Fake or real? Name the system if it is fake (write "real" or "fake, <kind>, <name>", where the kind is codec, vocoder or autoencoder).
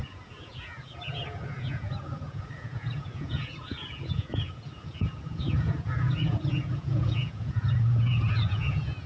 fake, vocoder, Vocos